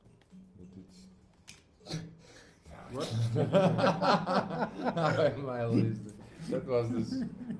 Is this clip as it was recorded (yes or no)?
yes